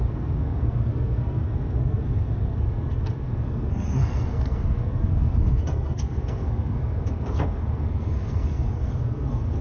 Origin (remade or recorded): remade